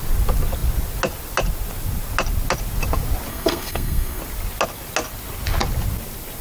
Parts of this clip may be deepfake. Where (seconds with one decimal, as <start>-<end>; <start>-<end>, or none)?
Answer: 3.3-4.2